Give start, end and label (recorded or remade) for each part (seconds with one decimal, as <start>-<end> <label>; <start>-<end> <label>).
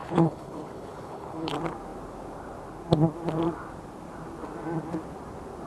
0.0-1.5 remade; 1.5-5.7 recorded